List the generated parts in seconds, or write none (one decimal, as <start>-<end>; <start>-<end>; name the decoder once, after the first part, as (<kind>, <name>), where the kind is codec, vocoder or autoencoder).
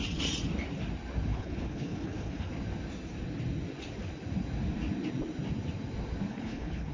1.3-2.5 (codec, HILCodec); 6.3-6.9